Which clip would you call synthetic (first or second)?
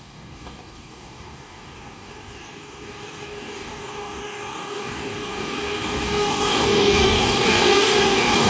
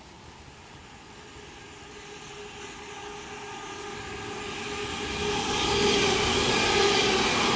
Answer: first